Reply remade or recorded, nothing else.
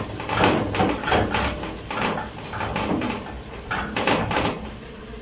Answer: remade